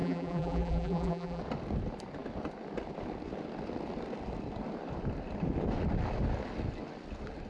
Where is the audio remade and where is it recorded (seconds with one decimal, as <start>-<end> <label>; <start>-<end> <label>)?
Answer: 0.0-1.4 remade; 1.4-7.5 recorded